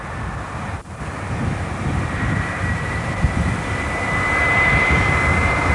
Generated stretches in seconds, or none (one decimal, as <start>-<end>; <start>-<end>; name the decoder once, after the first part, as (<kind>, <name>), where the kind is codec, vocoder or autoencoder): 0.8-4.2 (vocoder, BigVGAN v2)